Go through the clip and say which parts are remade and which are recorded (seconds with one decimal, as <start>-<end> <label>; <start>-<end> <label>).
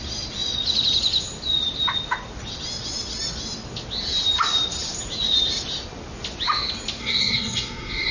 0.0-7.0 recorded; 7.0-8.1 remade